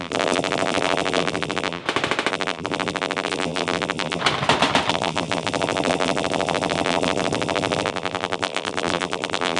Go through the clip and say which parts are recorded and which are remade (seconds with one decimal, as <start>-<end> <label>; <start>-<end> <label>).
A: 0.0-1.8 remade; 1.8-2.3 recorded; 2.3-4.2 remade; 4.2-4.9 recorded; 4.9-9.6 remade